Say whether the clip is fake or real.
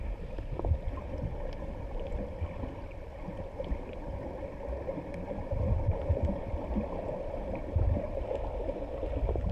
real